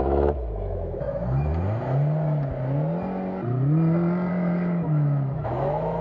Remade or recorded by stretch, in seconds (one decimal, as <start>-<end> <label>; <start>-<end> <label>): 0.0-1.5 remade; 1.5-4.3 recorded; 4.3-6.0 remade